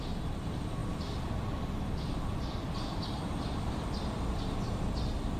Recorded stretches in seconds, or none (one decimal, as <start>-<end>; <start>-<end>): 0.0-5.4